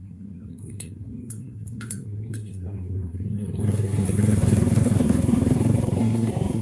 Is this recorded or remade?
remade